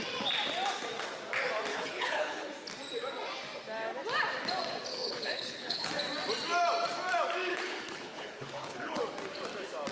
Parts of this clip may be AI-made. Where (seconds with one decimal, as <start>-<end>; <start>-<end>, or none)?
1.7-2.5; 4.9-5.9; 7.5-9.0